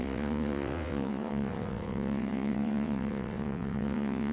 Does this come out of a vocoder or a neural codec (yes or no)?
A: yes